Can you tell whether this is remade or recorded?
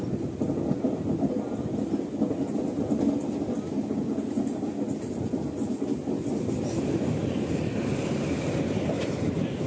recorded